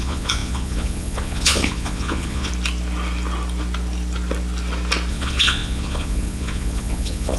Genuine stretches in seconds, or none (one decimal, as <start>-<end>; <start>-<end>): 2.5-5.1